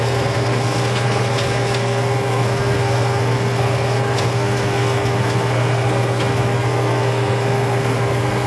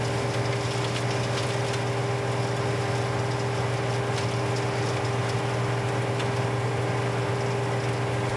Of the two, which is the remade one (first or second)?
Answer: first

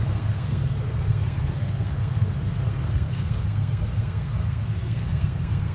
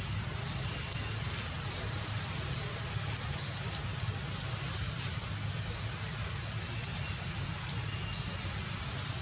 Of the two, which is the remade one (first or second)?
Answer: first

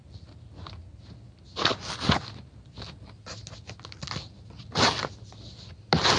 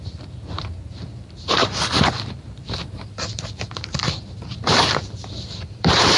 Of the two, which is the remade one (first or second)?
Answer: second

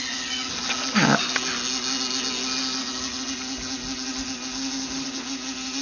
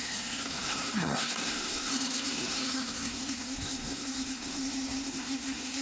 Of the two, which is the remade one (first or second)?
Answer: second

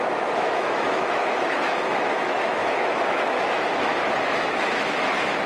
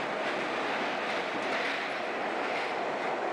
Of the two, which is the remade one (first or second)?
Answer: first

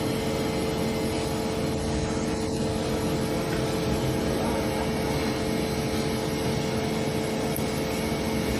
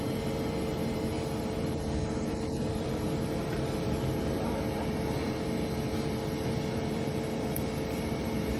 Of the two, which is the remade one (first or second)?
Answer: second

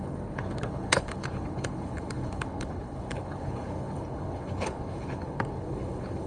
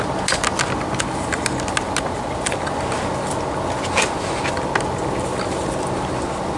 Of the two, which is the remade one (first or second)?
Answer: first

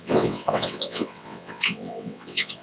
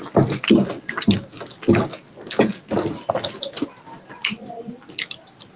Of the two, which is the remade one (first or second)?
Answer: first